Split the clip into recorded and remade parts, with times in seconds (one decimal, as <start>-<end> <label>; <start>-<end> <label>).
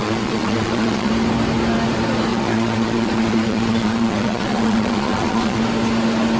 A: 0.0-1.1 remade; 1.1-2.3 recorded; 2.3-5.6 remade; 5.6-6.4 recorded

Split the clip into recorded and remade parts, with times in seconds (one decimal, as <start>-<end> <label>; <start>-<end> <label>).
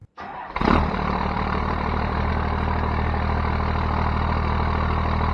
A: 0.0-2.3 remade; 2.3-5.3 recorded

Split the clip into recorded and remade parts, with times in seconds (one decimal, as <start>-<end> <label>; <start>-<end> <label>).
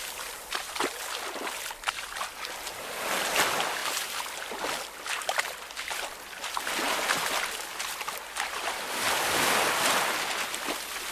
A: 0.0-11.1 recorded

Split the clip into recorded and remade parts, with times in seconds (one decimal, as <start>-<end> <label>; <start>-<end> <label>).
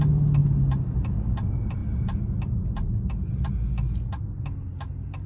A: 0.0-5.3 recorded